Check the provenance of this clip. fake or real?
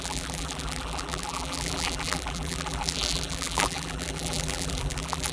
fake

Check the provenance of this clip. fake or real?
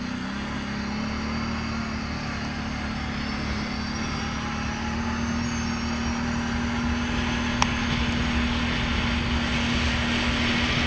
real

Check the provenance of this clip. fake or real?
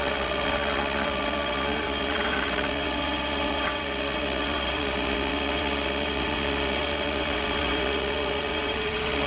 fake